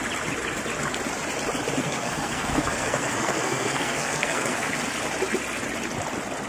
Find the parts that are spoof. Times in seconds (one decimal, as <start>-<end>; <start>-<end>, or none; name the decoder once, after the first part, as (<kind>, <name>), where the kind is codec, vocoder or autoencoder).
1.8-4.7 (codec, SNAC)